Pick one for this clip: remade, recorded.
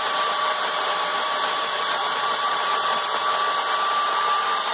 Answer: remade